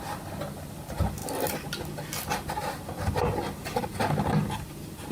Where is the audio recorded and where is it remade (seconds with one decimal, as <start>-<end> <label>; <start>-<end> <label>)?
0.0-5.1 recorded